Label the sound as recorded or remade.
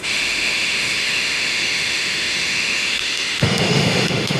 remade